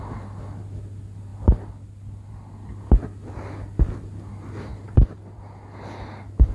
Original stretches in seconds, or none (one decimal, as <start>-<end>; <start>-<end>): 0.0-4.7; 5.4-6.5